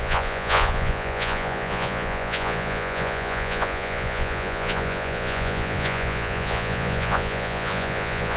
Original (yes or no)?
no